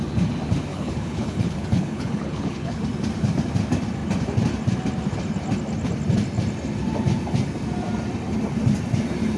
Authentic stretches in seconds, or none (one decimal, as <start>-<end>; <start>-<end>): 0.0-0.7; 2.8-9.4